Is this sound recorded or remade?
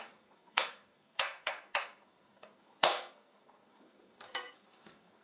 remade